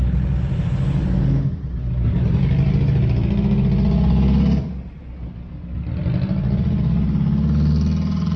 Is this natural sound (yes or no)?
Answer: yes